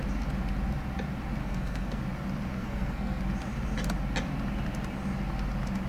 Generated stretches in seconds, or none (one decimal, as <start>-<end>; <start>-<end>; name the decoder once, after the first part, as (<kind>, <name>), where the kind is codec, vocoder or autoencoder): 1.4-2.0 (codec, SNAC); 2.6-3.2

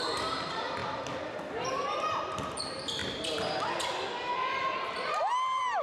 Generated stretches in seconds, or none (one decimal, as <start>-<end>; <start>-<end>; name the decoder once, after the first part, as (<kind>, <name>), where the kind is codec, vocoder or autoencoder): 0.0-0.8 (vocoder, BigVGAN v2); 2.3-3.0; 4.9-5.8

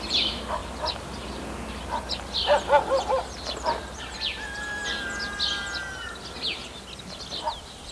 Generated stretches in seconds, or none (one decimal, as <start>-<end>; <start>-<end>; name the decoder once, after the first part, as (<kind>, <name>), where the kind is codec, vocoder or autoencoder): 0.0-4.8 (vocoder, BigVGAN v2); 7.4-7.9

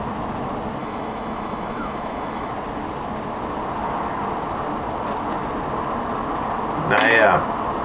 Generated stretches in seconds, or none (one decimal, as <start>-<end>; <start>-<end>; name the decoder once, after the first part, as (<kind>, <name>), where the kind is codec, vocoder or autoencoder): 0.8-2.5 (autoencoder, DAC-VAE)

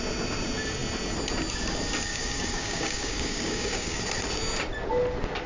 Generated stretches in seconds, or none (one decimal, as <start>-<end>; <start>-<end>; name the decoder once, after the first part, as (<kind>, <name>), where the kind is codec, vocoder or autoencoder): 2.1-4.0 (codec, DAC)